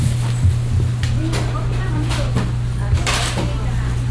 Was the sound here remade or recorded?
recorded